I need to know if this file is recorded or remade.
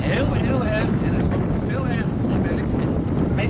recorded